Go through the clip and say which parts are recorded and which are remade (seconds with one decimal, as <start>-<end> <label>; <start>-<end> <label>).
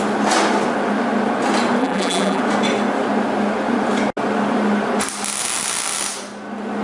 0.0-1.8 recorded; 1.8-2.4 remade; 2.4-6.8 recorded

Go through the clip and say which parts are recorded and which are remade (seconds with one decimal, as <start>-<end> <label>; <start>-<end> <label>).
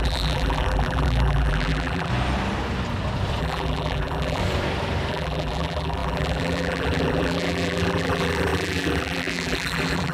0.0-2.1 remade; 2.1-3.4 recorded; 3.4-4.4 remade; 4.4-5.1 recorded; 5.1-10.1 remade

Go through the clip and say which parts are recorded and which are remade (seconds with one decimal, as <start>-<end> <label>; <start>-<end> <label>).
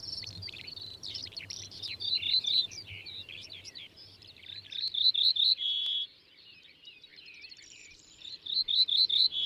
0.0-9.5 remade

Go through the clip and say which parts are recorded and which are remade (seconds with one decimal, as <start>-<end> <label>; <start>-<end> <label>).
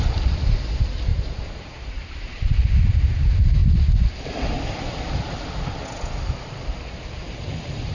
0.0-1.1 recorded; 1.1-2.3 remade; 2.3-7.9 recorded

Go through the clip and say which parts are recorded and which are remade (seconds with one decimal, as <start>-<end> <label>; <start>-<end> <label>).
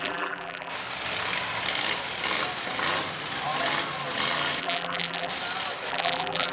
0.0-0.7 remade; 0.7-4.6 recorded; 4.6-5.3 remade; 5.3-5.9 recorded; 5.9-6.5 remade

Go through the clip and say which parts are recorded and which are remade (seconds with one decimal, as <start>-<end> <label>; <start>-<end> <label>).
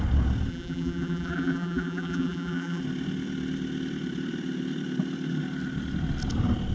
0.0-0.5 recorded; 0.5-2.8 remade; 2.8-6.7 recorded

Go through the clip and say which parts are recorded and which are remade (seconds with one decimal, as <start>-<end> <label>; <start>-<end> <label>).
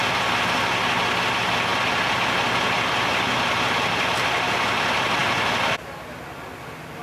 0.0-7.0 recorded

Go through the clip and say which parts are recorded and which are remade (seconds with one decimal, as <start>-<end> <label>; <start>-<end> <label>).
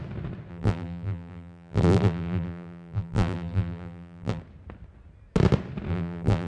0.0-0.5 recorded; 0.5-4.4 remade; 4.4-5.9 recorded; 5.9-6.5 remade